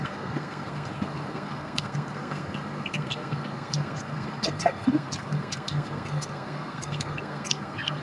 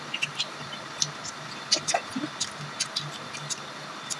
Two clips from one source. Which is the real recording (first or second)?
second